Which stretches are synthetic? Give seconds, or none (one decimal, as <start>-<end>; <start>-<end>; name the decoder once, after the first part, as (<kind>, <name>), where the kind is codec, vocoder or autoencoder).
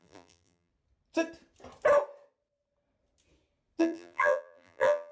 0.0-0.7 (vocoder, BigVGAN v2); 3.8-5.1